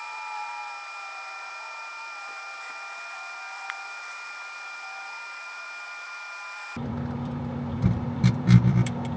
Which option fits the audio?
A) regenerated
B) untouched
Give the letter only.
A